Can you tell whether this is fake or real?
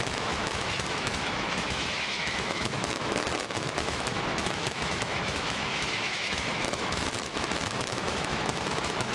fake